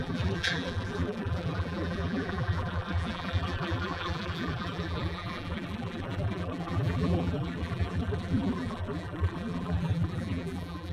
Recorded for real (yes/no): no